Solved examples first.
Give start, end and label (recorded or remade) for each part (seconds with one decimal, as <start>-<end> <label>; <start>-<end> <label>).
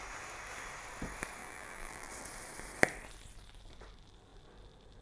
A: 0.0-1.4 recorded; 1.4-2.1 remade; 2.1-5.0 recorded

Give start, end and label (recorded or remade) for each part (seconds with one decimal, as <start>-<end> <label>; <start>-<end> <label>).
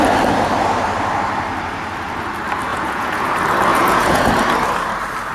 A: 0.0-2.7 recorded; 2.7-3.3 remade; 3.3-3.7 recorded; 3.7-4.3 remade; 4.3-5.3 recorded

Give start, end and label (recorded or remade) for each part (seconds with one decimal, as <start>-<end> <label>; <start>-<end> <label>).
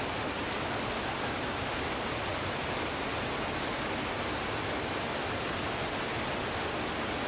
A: 0.0-7.3 recorded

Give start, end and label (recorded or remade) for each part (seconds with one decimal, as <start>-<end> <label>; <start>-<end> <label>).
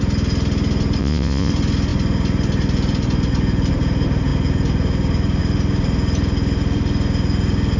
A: 0.0-1.0 recorded; 1.0-1.5 remade; 1.5-7.8 recorded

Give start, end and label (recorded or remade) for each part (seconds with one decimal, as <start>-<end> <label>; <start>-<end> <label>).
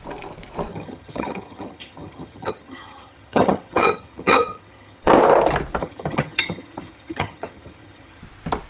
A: 0.0-0.7 recorded; 0.7-5.1 remade; 5.1-5.8 recorded; 5.8-8.2 remade; 8.2-8.7 recorded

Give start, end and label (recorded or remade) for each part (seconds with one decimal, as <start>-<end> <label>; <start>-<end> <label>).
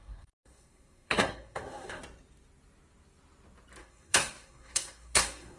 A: 0.0-2.0 remade; 2.0-3.8 recorded; 3.8-5.6 remade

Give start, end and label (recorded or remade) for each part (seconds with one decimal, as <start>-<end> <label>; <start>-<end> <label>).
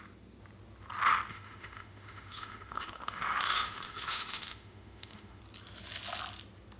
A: 0.0-1.3 recorded; 1.3-5.4 remade; 5.4-6.8 recorded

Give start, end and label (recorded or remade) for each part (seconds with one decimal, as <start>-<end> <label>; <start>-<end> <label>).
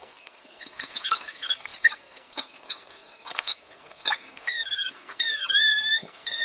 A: 0.0-6.4 remade